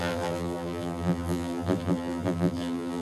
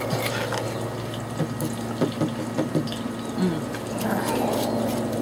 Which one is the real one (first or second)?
second